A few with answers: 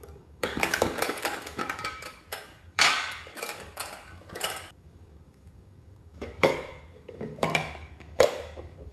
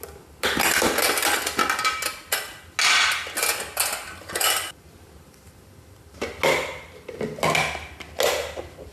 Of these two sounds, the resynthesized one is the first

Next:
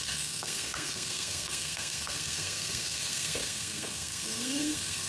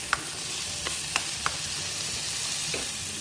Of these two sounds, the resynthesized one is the first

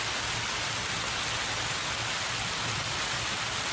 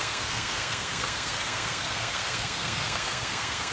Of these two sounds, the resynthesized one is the second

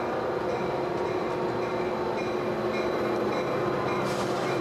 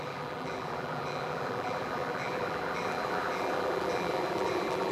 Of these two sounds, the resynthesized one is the second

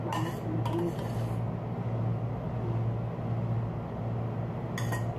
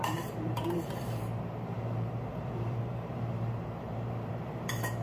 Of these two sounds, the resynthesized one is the second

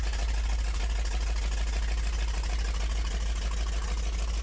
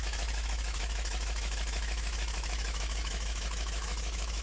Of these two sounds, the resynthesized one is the second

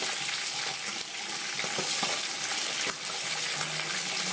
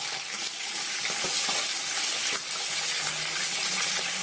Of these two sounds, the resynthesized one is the second